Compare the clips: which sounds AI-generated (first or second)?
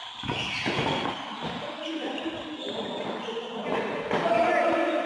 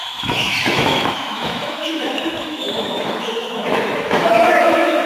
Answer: second